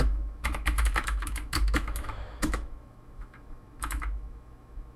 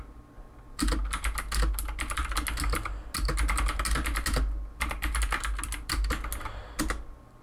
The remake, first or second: first